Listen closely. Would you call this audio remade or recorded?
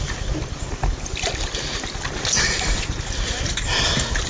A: recorded